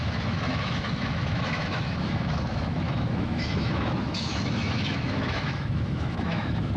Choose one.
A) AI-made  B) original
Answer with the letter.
A